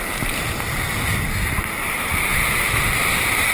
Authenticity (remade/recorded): recorded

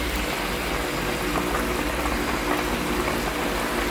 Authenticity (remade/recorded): recorded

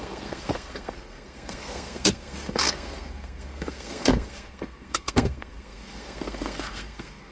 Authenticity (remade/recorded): remade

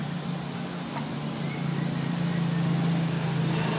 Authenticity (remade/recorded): recorded